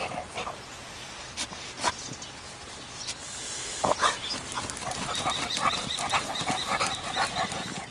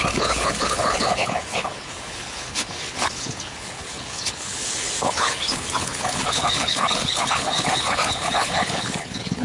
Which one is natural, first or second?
first